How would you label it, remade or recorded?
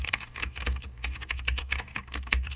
remade